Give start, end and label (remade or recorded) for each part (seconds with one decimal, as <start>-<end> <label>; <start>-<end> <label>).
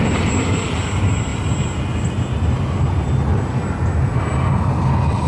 0.0-5.3 recorded